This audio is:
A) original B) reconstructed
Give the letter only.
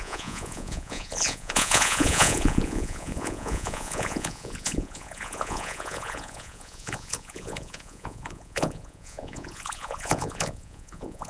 B